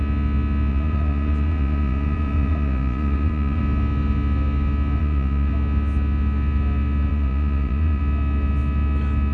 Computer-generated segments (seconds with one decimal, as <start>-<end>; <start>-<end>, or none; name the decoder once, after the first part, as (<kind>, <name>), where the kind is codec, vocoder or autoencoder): 0.7-3.6 (vocoder, Vocos); 5.0-5.5; 7.1-8.0